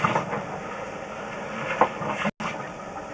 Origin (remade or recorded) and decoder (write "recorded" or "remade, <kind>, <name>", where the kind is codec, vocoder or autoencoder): recorded